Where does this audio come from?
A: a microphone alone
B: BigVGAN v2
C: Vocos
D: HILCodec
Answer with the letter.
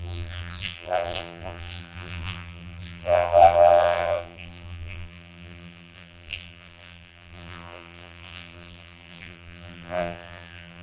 B